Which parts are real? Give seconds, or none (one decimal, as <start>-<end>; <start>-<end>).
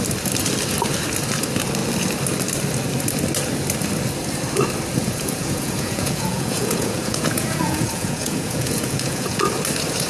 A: 0.0-5.0; 9.4-10.1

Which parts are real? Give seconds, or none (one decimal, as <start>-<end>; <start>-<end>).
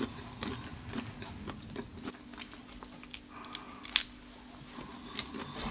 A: 0.0-5.7